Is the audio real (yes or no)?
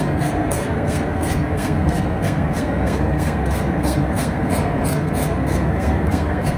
no